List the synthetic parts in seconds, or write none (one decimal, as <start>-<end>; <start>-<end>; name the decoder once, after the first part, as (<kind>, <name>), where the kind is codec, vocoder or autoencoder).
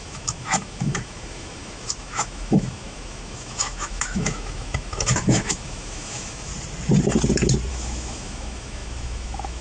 0.0-6.5 (autoencoder, DAC-VAE); 7.7-9.6